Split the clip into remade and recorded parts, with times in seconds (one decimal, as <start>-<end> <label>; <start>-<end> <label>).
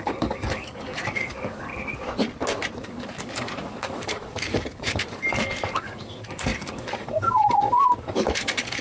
0.0-1.7 remade; 1.7-2.8 recorded; 2.8-8.8 remade